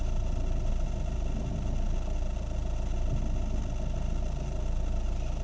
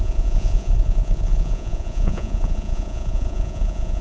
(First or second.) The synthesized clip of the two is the second